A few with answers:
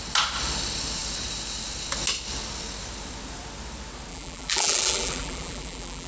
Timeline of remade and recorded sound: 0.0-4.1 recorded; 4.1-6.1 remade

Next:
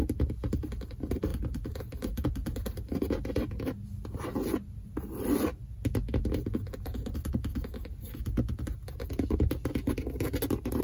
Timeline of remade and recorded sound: 0.0-10.8 recorded